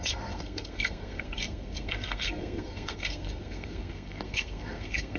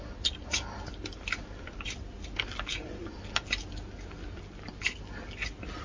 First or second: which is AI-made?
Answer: first